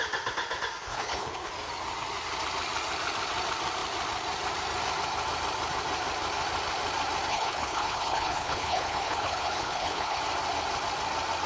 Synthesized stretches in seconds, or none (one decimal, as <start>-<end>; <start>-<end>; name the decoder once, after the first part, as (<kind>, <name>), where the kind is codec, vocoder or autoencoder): 0.9-1.5 (codec, HILCodec); 7.3-10.2